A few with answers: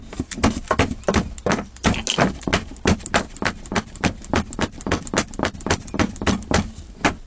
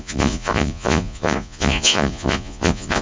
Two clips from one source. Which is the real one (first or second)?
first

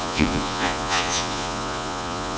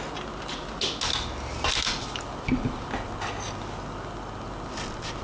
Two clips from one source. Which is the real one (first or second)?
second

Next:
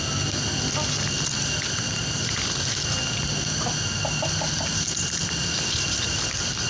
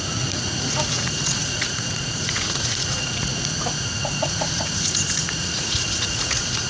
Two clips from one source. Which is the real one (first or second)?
first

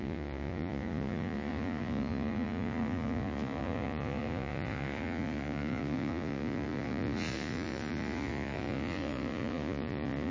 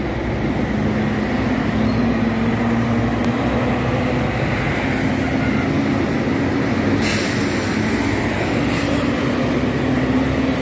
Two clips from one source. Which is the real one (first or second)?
second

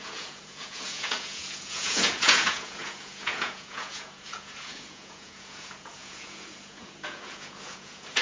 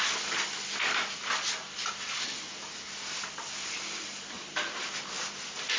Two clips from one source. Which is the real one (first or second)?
second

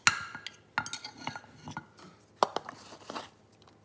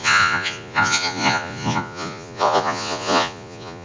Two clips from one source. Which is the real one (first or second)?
first